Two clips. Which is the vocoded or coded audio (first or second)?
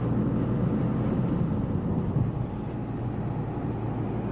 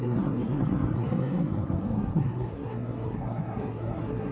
second